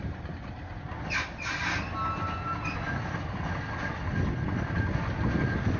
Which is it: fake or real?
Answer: real